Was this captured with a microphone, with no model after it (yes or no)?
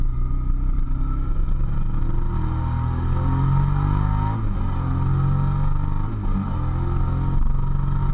yes